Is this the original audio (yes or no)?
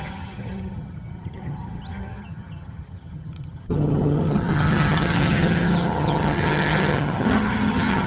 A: no